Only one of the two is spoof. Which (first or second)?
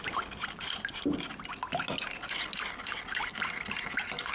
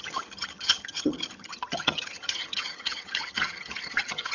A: second